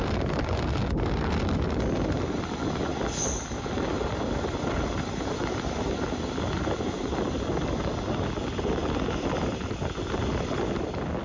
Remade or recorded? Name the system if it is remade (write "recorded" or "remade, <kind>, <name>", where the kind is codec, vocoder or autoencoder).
recorded